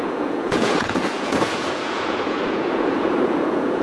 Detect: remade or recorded remade